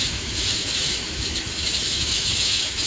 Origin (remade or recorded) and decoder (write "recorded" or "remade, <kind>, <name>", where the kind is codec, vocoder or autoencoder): remade, autoencoder, DAC-VAE